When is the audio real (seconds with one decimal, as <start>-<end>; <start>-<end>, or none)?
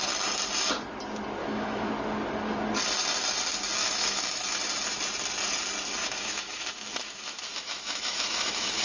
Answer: 0.0-1.4; 1.9-3.8; 4.6-6.0